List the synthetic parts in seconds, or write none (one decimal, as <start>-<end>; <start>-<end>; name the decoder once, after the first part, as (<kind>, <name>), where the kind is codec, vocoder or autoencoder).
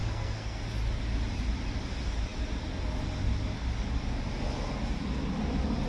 0.0-0.6 (codec, SNAC)